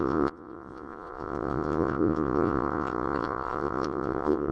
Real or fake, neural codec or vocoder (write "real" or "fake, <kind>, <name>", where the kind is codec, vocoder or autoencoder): fake, vocoder, Vocos